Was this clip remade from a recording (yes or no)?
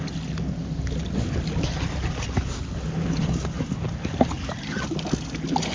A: no